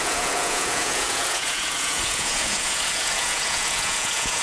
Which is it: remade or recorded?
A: remade